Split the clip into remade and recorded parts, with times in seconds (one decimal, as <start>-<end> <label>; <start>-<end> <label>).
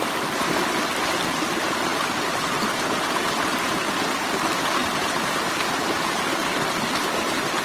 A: 0.0-4.8 recorded; 4.8-6.4 remade; 6.4-7.6 recorded